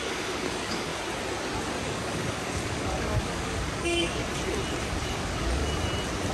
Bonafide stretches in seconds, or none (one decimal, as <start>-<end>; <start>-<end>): 0.9-1.8; 4.2-4.7; 5.6-6.3